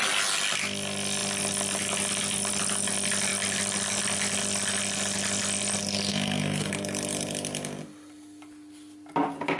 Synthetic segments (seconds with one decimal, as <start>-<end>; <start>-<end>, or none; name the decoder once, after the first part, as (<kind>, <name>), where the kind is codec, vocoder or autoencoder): 6.1-6.7 (codec, SNAC)